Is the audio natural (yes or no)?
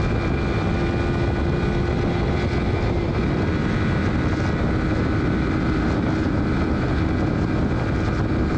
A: yes